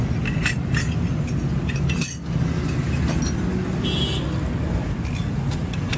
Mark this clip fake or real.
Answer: real